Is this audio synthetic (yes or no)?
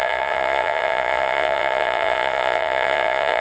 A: yes